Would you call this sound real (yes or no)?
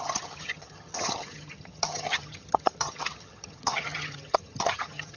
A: no